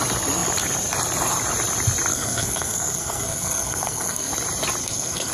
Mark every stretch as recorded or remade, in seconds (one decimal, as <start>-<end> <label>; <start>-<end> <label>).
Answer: 0.0-2.1 recorded; 2.1-4.3 remade; 4.3-4.8 recorded; 4.8-5.3 remade